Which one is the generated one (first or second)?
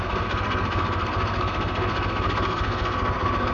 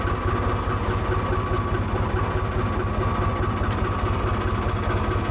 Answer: first